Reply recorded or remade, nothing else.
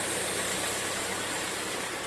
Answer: remade